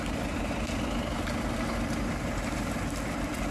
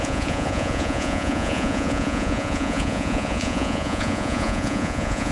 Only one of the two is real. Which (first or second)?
first